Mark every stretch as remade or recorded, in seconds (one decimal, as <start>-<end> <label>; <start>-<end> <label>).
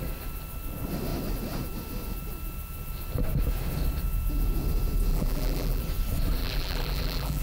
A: 0.0-5.1 recorded; 5.1-5.8 remade; 5.8-6.4 recorded; 6.4-7.4 remade